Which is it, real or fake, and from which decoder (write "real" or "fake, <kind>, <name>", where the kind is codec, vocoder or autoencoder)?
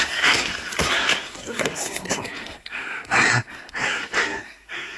fake, codec, SNAC